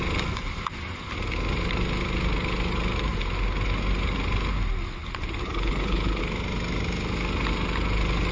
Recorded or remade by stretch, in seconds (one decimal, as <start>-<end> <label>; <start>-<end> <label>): 0.0-5.4 recorded; 5.4-6.2 remade; 6.2-8.3 recorded